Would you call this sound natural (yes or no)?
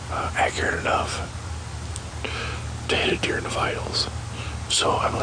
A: yes